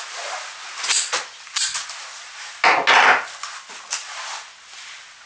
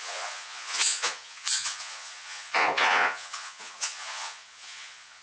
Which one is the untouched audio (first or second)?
first